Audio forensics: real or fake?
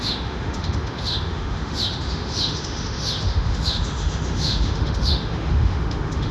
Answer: fake